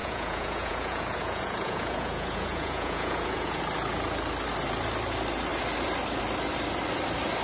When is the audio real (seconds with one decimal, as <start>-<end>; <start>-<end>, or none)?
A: 3.6-7.4